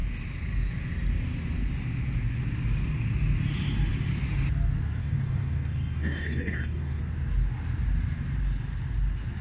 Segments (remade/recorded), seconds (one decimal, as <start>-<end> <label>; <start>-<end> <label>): 0.0-5.0 recorded; 5.0-7.0 remade; 7.0-9.4 recorded